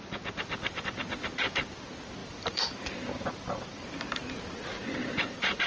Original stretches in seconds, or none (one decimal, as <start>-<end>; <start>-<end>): 0.0-2.2